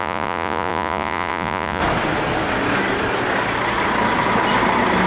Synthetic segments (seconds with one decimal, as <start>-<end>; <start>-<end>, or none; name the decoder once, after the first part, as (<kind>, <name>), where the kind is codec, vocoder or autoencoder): 0.0-1.8 (vocoder, Vocos)